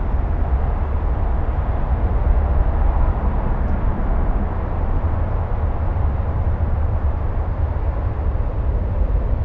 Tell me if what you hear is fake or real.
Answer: real